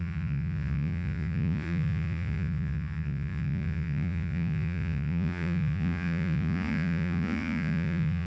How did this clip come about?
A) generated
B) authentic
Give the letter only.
A